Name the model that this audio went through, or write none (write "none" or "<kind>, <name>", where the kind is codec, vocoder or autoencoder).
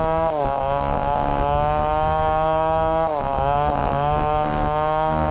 codec, DAC